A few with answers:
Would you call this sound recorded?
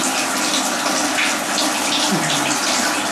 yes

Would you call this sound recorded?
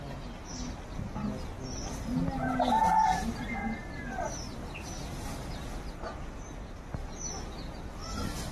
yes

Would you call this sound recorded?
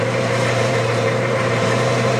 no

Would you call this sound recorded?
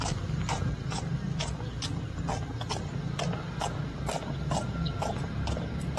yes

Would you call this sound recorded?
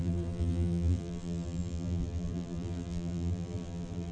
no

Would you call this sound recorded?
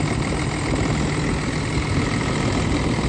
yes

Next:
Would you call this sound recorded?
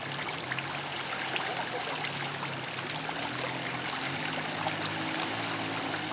yes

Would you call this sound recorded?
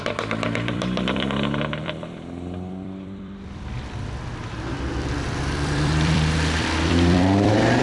no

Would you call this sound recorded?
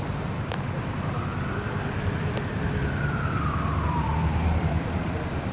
no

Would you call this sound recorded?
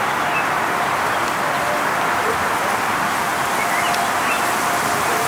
yes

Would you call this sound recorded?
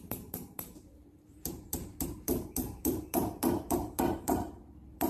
no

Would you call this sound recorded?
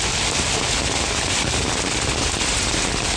yes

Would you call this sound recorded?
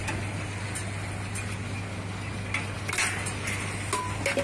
yes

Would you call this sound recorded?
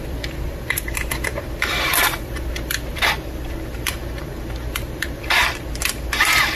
no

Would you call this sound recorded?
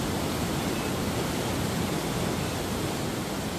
yes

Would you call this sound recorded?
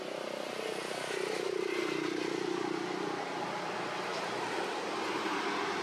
yes